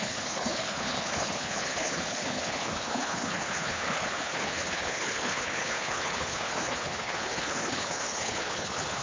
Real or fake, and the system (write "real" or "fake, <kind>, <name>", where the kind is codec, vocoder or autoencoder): fake, codec, HILCodec